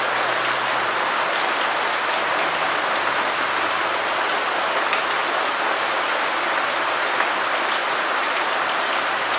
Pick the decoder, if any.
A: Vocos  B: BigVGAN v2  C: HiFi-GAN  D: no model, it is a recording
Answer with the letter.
D